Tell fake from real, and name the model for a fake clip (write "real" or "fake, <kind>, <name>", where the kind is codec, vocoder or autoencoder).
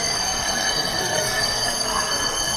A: fake, codec, SNAC